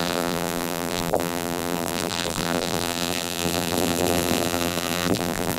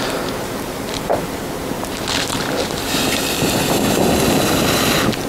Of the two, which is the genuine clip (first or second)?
second